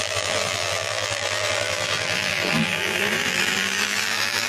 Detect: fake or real fake